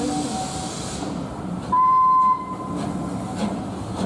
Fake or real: real